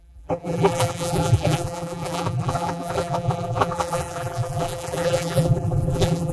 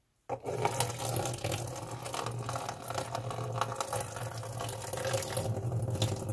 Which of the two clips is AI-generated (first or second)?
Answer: first